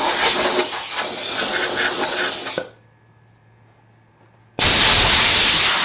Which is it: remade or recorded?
recorded